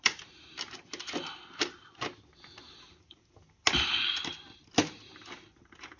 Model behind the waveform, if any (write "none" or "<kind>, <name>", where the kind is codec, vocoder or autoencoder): none